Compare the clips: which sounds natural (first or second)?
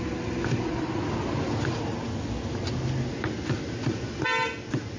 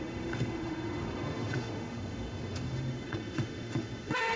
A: first